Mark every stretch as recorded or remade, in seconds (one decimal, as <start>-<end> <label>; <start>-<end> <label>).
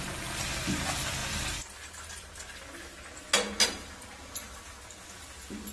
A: 0.0-5.7 recorded